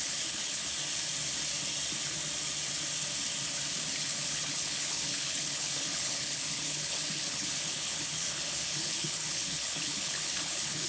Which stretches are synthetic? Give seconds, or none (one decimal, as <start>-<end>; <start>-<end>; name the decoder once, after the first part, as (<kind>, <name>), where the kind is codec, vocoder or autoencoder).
0.0-0.6 (codec, HILCodec); 3.8-10.9